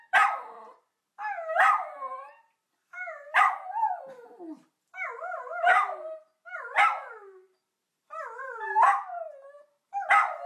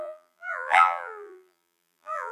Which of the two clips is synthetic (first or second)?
second